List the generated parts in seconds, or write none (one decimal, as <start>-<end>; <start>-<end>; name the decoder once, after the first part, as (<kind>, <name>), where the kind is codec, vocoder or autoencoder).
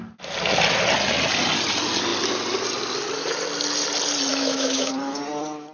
4.3-4.9 (autoencoder, DAC-VAE)